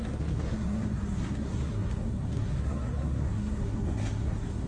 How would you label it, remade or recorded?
remade